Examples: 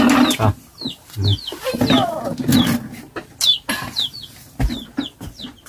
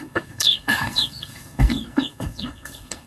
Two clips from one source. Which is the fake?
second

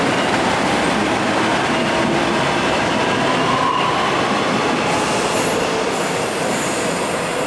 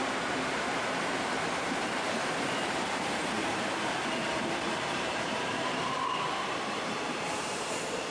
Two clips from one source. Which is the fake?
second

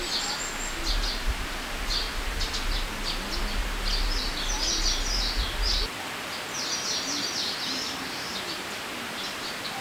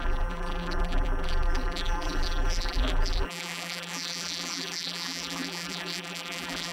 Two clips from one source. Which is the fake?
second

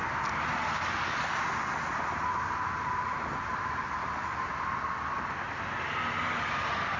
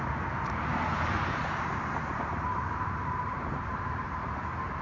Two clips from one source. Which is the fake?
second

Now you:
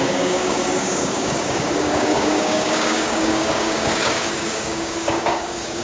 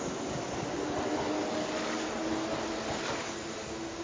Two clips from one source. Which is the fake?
first